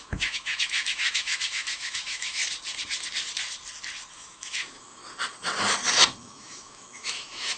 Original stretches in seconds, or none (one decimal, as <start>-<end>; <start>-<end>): 2.4-4.1; 5.0-6.2